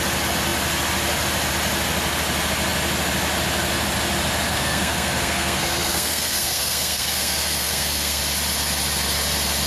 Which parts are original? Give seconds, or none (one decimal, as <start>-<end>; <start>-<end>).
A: 0.0-4.5; 8.2-9.7